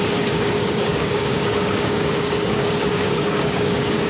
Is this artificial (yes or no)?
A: yes